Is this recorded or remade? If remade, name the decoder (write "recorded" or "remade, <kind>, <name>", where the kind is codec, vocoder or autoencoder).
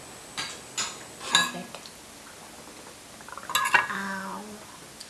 recorded